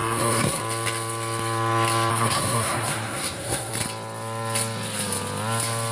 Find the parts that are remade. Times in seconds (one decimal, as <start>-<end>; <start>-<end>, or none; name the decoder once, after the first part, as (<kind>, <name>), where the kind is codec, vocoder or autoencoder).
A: 0.0-0.6 (codec, SNAC); 2.1-3.7